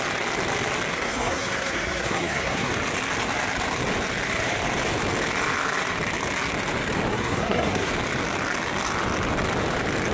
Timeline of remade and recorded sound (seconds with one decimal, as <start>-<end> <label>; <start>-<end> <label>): 0.0-0.9 recorded; 0.9-2.7 remade; 2.7-7.1 recorded; 7.1-7.9 remade; 7.9-10.1 recorded